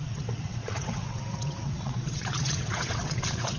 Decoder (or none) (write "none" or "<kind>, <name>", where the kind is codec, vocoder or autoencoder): vocoder, WaveNeXt